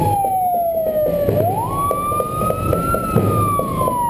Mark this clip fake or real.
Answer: real